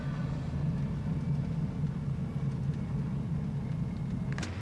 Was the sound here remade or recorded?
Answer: recorded